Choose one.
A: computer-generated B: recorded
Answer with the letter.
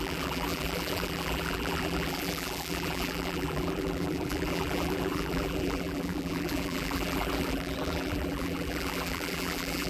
A